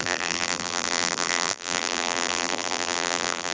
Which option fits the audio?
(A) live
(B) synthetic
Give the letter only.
B